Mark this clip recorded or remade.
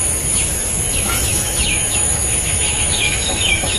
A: remade